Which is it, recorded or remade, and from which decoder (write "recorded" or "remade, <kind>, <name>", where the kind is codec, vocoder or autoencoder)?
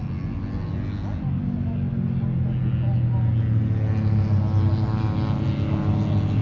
recorded